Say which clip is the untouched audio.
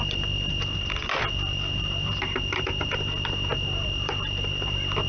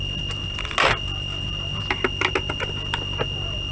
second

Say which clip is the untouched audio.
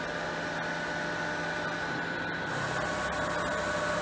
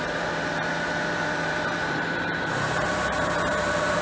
first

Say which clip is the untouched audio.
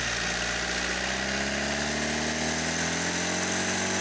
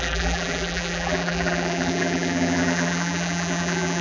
first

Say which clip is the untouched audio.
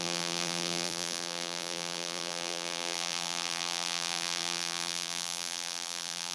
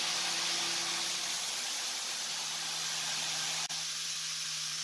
second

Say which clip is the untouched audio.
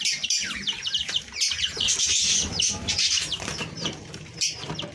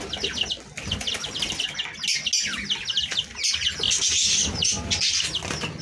second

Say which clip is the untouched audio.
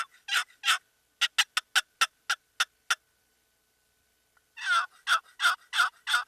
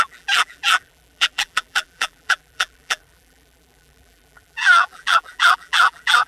first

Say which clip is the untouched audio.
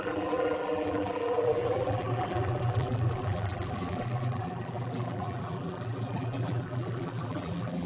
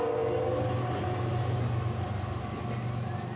second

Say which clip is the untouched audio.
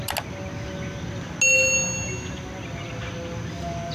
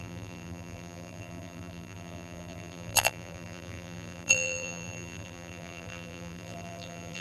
first